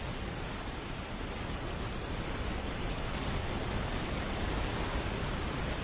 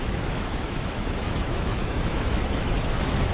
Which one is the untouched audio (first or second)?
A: first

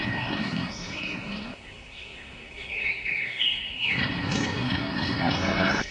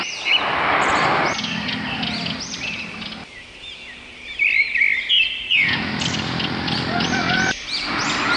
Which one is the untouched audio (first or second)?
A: second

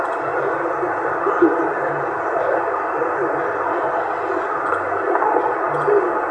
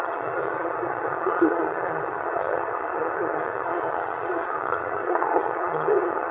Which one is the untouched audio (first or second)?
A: first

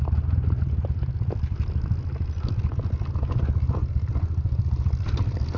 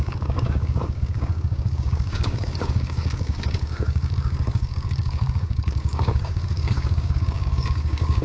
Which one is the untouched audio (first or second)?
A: first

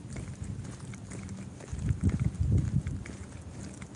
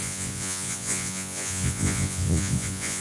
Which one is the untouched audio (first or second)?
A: first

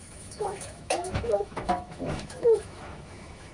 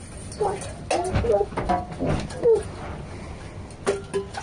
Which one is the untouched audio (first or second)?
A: second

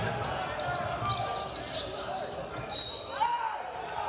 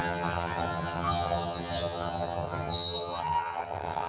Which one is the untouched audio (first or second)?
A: first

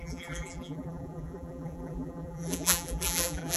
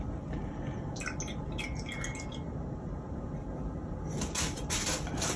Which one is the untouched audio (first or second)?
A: second